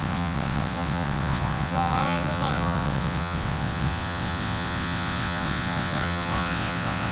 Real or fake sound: fake